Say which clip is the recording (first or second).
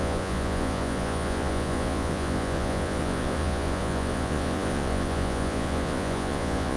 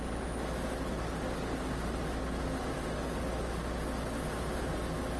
second